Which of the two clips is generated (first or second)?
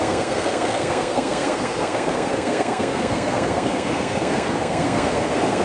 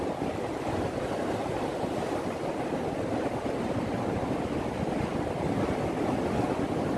first